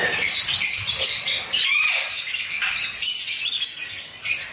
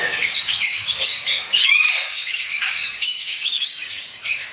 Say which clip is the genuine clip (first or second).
first